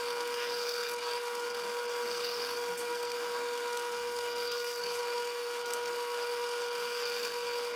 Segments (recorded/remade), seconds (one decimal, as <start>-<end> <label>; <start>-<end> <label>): 0.0-7.8 remade